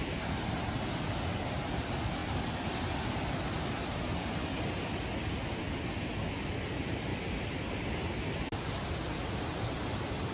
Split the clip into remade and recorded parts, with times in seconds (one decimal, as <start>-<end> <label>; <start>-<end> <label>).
0.0-10.3 recorded